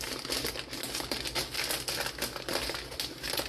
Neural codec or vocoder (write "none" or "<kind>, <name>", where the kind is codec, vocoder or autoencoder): none